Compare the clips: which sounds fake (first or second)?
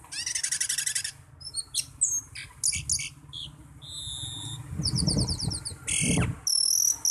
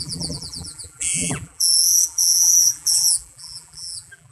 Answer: second